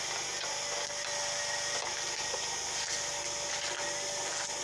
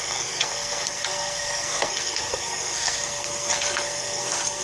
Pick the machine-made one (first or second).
second